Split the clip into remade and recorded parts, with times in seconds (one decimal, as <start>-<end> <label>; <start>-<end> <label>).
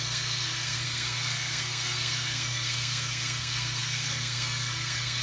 0.0-5.2 remade